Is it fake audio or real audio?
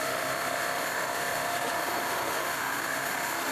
fake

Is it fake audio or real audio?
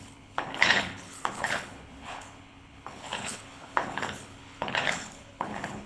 fake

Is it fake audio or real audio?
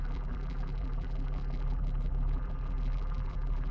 fake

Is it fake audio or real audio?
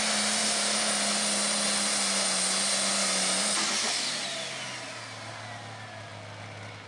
real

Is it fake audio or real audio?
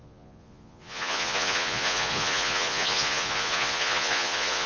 fake